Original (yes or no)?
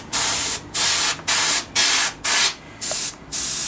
yes